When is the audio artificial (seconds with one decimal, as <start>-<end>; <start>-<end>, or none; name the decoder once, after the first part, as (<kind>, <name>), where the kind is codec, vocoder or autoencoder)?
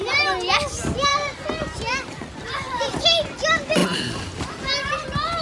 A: none